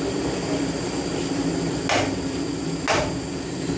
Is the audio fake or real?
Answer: real